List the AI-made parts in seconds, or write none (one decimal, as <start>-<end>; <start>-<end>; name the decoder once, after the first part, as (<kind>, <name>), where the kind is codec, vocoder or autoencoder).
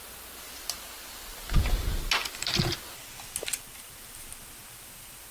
none